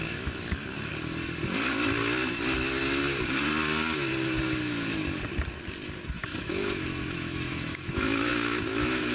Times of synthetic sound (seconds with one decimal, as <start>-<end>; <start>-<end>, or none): 0.0-0.9; 6.1-9.1

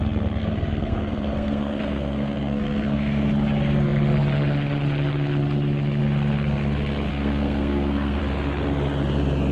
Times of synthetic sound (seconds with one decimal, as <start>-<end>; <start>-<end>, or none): 0.4-3.3; 7.1-8.2

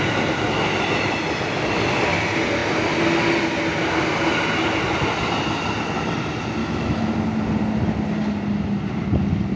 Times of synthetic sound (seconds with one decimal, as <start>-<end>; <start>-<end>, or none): 6.6-7.1

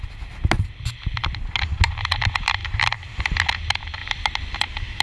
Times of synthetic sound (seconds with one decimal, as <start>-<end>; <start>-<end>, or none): none

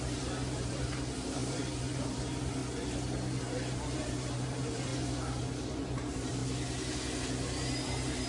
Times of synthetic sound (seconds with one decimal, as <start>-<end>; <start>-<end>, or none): 0.0-2.6; 3.4-4.9; 5.4-6.4; 7.2-8.3

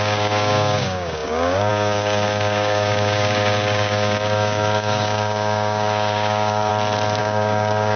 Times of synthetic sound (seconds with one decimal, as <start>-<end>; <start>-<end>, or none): 0.0-6.7; 7.2-8.0

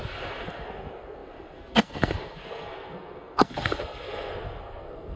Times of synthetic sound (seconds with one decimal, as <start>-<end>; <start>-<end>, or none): 0.0-5.2

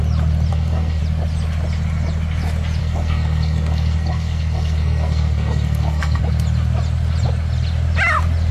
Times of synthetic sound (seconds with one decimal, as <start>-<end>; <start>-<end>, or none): 0.5-1.0; 2.8-6.2